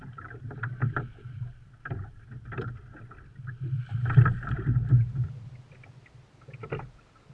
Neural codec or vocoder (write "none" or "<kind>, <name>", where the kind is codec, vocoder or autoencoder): none